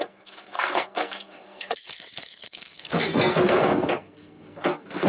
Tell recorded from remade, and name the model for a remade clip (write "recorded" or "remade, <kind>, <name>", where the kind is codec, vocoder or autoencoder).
remade, codec, SNAC